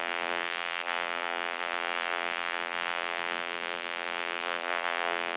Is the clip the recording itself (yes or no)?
no